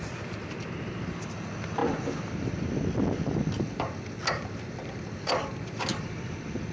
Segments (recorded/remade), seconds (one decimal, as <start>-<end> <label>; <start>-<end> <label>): 0.0-6.7 recorded